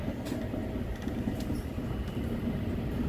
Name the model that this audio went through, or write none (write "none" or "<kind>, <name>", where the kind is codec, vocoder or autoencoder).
none